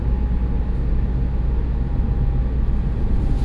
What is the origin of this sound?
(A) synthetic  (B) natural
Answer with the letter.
B